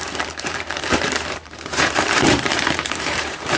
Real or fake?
fake